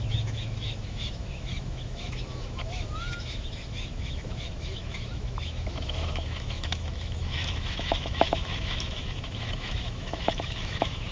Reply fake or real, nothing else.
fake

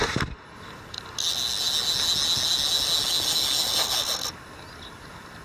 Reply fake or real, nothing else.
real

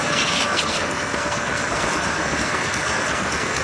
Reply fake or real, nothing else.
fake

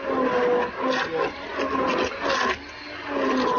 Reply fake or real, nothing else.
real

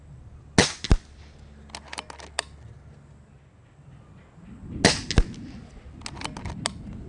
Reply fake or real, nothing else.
real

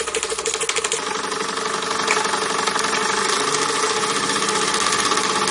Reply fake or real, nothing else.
real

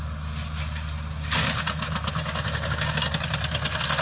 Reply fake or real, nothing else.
real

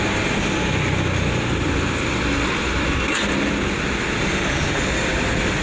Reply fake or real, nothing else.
real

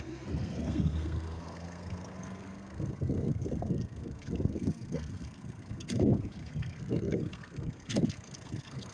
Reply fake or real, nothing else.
fake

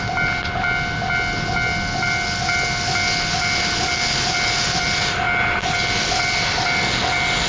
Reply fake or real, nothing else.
real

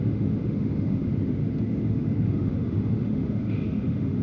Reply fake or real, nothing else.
fake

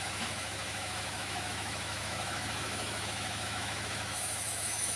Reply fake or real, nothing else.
fake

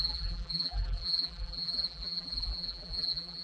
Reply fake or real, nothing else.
fake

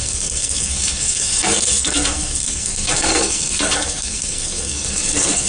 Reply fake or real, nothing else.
fake